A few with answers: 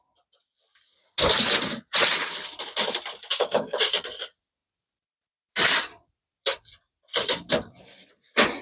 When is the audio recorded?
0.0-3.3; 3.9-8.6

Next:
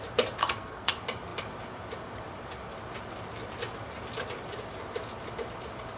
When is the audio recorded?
0.0-0.4; 0.9-6.0

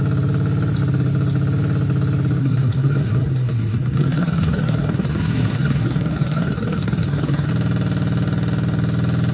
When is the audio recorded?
0.0-2.4; 7.5-9.3

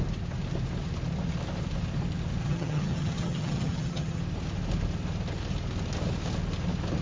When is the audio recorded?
0.0-2.4; 4.2-7.0

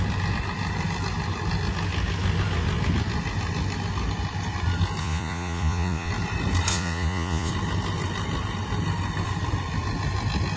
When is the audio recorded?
0.0-5.0; 6.1-6.7; 7.5-10.6